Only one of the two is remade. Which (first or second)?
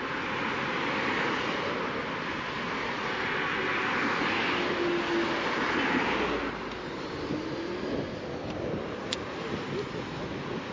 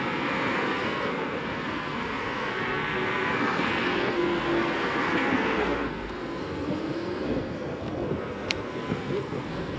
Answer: second